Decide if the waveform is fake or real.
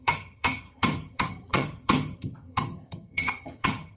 fake